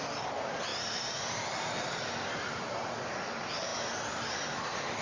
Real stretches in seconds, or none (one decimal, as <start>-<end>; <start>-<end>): 0.0-5.0